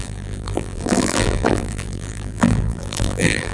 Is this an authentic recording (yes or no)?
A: no